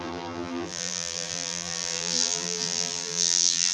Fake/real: fake